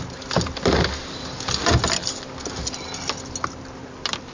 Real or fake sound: real